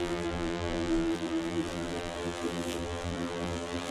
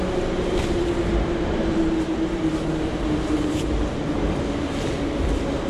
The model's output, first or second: first